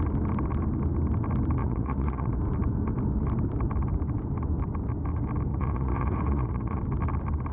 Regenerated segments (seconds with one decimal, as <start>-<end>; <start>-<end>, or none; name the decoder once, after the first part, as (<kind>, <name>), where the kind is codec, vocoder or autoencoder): 1.6-2.3 (vocoder, Vocos); 5.5-6.8